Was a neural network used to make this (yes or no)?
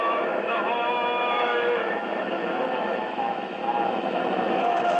yes